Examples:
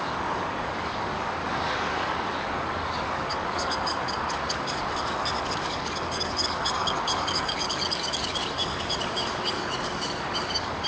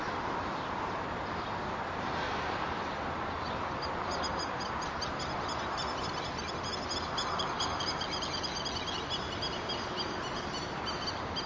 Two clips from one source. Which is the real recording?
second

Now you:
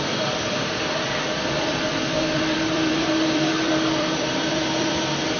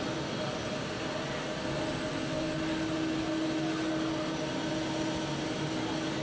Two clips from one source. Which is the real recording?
second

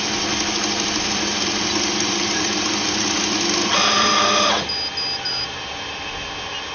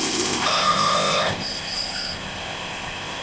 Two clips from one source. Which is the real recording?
first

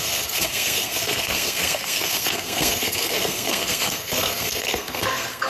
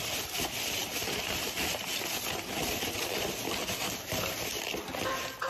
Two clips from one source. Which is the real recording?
second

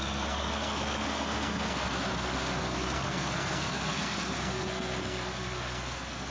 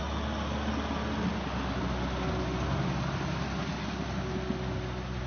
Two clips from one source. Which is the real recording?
second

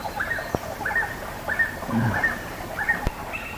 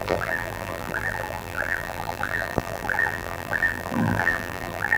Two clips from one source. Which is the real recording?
first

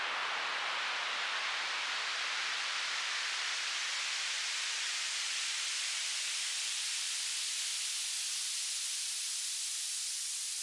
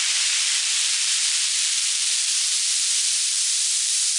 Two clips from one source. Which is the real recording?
first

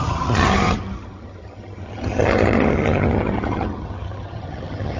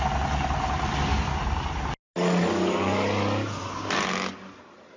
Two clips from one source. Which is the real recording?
second